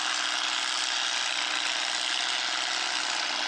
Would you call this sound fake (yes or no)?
no